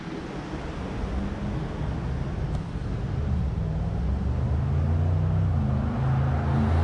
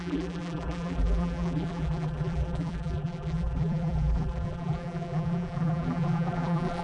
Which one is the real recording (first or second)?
first